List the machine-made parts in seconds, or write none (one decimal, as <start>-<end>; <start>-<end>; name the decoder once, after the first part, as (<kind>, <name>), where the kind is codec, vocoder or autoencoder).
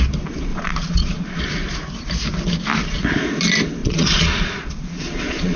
0.5-1.4 (vocoder, Vocos); 3.8-5.6